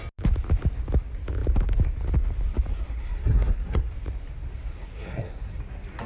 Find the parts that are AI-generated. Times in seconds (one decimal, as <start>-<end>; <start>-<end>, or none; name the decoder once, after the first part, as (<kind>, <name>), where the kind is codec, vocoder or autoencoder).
2.7-3.9 (codec, SNAC); 4.7-5.6